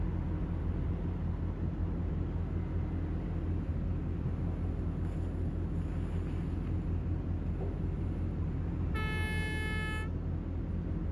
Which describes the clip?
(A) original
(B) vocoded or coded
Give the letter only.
A